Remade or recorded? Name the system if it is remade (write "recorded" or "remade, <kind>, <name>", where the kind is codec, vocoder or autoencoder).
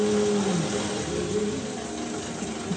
recorded